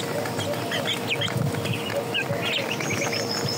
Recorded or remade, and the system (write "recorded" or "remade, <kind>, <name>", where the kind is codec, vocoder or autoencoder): recorded